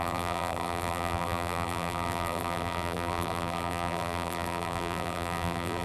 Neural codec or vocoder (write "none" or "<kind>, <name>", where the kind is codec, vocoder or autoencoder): vocoder, BigVGAN v2